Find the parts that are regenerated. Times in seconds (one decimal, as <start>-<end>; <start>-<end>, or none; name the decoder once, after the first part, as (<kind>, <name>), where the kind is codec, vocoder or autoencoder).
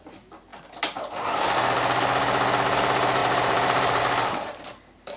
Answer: 3.2-4.0 (vocoder, BigVGAN v2)